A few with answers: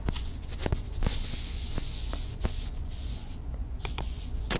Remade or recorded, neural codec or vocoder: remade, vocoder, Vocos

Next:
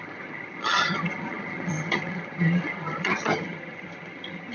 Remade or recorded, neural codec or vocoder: remade, vocoder, HiFi-GAN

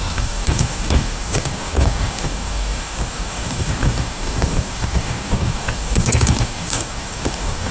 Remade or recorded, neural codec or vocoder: remade, codec, DAC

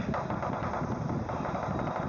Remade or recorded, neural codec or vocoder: recorded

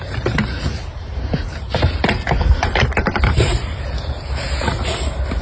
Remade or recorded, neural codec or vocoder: remade, vocoder, BigVGAN v2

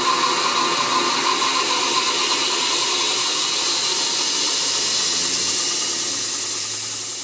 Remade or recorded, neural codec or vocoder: recorded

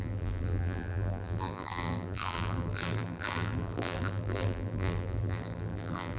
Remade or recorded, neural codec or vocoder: remade, vocoder, BigVGAN v2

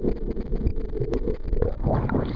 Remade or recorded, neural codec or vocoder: recorded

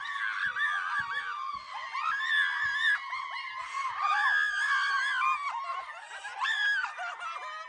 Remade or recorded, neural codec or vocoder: recorded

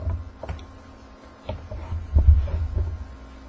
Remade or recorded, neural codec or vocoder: recorded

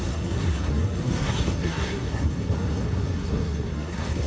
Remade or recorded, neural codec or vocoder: remade, codec, SNAC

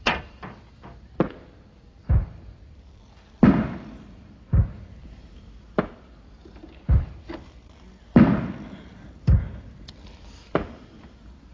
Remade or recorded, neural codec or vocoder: remade, vocoder, BigVGAN v2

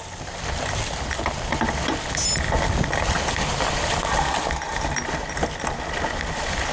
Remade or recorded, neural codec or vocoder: recorded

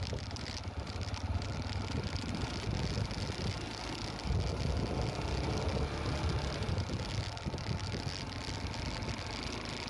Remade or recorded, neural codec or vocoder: recorded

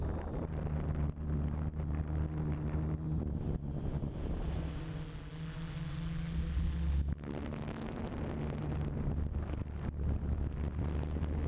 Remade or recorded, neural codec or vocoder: recorded